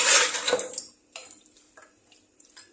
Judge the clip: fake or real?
fake